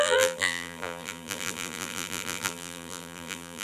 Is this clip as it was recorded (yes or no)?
no